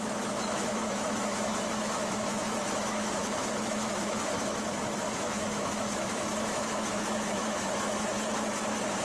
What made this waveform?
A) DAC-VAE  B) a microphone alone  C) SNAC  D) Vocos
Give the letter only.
A